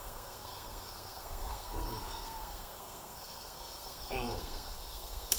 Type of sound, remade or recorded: remade